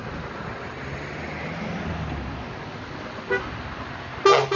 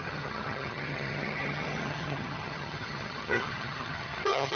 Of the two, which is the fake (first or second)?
second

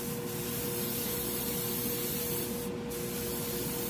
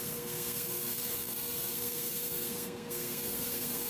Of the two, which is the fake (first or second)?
second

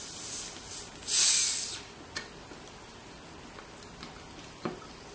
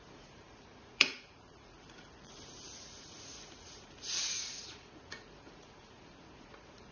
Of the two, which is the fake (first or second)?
second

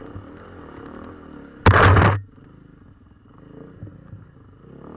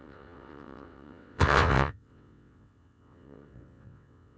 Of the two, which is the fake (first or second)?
second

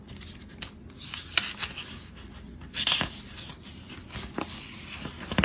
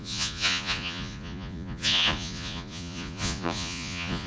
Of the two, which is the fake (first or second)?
second